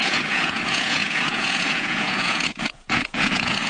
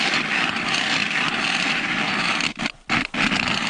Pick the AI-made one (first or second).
first